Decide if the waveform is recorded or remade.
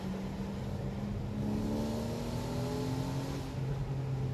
recorded